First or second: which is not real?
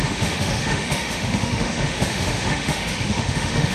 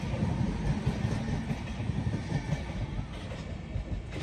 first